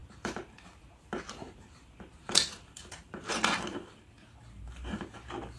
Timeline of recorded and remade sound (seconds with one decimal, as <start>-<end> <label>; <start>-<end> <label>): 0.0-3.4 remade; 3.4-5.6 recorded